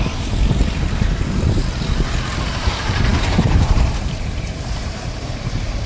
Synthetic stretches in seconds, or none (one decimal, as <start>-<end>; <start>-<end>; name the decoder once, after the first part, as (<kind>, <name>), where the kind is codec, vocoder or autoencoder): 0.0-1.6 (vocoder, BigVGAN v2); 2.5-5.9